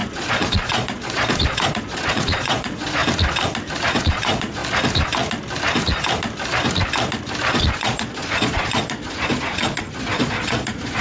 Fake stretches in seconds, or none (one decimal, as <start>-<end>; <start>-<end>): 0.0-3.0; 4.0-4.6; 7.6-11.0